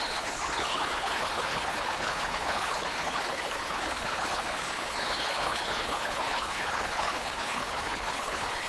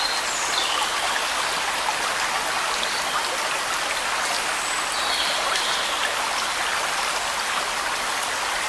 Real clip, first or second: second